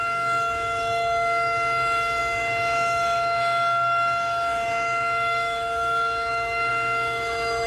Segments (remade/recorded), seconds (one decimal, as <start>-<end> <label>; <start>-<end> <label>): 0.0-7.7 remade